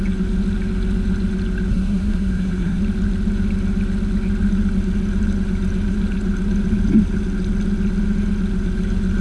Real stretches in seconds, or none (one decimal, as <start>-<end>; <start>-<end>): 0.0-1.7; 2.8-9.2

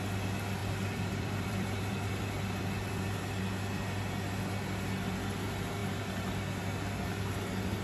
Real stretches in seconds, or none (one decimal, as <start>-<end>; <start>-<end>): 0.0-0.6; 3.0-7.8

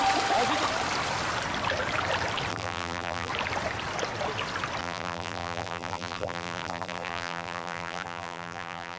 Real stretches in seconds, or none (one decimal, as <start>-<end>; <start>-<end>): 0.0-2.5; 3.3-4.8

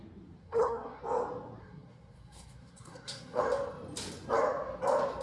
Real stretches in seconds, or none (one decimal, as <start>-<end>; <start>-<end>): 0.0-0.4; 1.0-1.6; 3.4-5.2

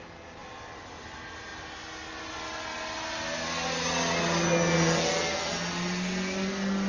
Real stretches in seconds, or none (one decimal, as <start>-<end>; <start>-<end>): 0.0-6.9

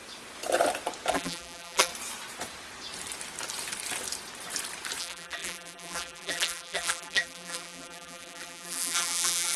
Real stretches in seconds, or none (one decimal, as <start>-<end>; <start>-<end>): 0.0-1.1; 1.9-5.0

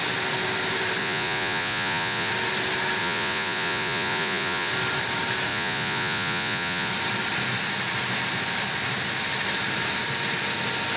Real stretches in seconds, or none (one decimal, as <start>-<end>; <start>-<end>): 0.0-1.0; 2.3-3.0; 4.7-5.5; 6.9-11.0

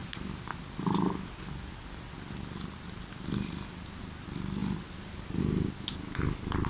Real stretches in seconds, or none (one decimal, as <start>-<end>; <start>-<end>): 0.0-6.7